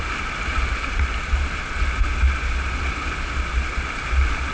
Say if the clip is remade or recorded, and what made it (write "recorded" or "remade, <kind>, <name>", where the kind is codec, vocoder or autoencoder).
recorded